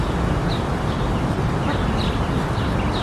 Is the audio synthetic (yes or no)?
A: no